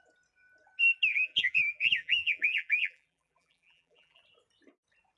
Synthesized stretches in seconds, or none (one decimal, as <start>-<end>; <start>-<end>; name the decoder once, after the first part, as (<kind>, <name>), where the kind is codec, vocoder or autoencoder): 1.1-4.2 (vocoder, BigVGAN v2)